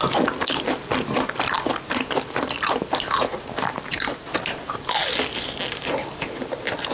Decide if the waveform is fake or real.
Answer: real